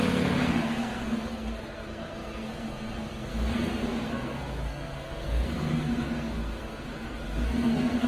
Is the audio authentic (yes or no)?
no